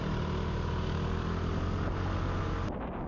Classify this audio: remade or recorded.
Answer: recorded